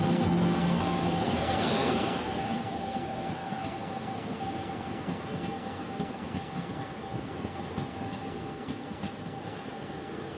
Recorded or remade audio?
remade